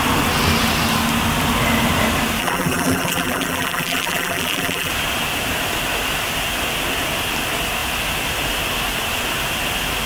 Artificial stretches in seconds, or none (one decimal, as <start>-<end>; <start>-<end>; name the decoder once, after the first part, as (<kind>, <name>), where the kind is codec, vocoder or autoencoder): 2.4-4.9 (vocoder, BigVGAN v2)